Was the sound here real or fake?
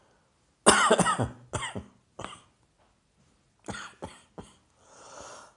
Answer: real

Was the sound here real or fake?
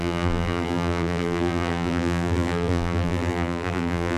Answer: fake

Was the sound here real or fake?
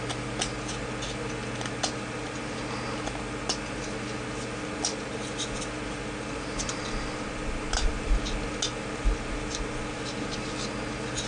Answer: real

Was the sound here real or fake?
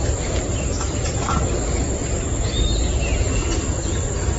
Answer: real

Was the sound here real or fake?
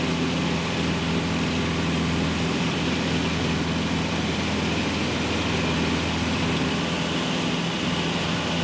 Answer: real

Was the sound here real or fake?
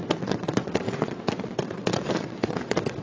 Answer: fake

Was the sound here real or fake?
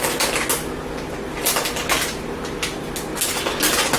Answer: real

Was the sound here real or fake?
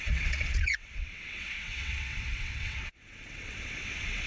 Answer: fake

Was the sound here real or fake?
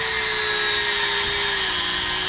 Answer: real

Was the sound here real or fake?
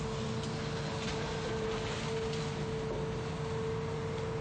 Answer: real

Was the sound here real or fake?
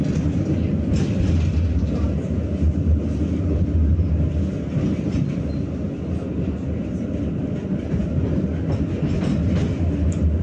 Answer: real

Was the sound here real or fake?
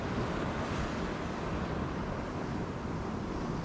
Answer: real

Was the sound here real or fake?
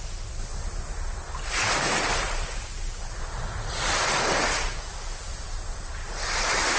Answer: real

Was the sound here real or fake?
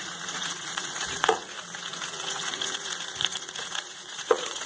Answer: fake